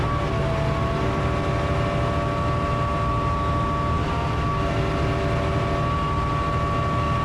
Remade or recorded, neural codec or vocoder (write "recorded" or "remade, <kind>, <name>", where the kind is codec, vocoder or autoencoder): recorded